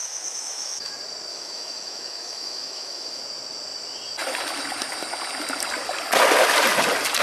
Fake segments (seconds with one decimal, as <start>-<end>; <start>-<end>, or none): 0.0-0.9; 1.3-3.2